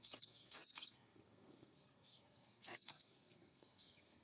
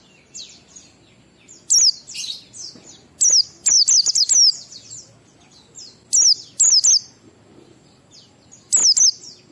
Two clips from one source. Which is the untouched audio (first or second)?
second